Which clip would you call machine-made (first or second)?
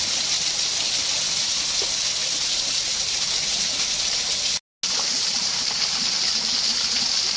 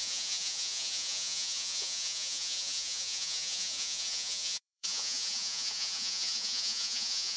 second